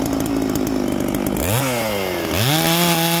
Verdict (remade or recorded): recorded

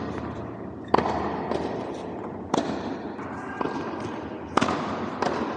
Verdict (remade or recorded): recorded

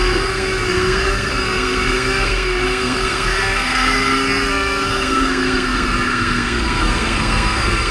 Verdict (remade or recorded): remade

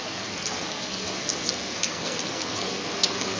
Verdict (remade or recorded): remade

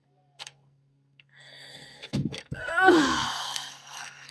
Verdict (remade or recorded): remade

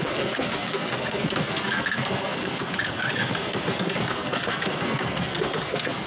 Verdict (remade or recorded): remade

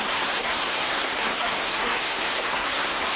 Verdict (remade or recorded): remade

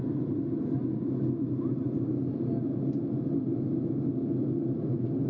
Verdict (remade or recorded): recorded